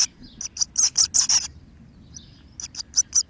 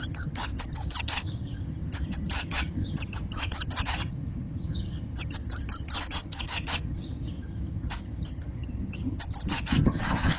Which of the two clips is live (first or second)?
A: first